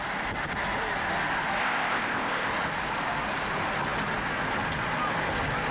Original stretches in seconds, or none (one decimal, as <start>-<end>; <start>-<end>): 0.0-1.6; 2.5-5.7

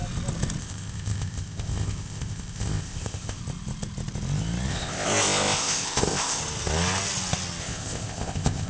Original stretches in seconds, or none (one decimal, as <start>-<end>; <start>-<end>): 0.0-0.6; 3.4-4.7; 6.4-7.6

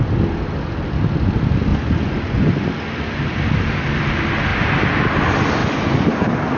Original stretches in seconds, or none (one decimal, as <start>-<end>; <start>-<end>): 0.0-1.7; 2.5-6.6

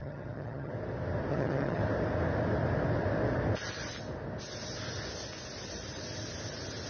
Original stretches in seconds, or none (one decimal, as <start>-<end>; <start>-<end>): 0.7-1.3; 1.8-6.9

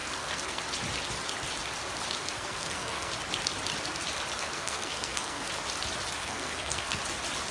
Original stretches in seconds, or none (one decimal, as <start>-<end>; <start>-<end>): 0.6-2.2; 3.1-4.4; 5.5-6.2; 7.0-7.5

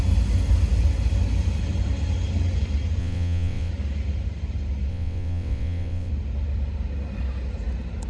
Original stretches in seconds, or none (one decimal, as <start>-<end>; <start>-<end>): 0.0-3.0; 3.7-4.9; 6.1-8.1

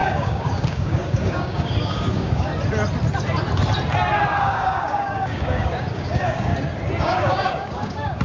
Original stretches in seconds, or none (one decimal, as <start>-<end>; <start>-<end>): 2.5-4.4; 6.5-7.0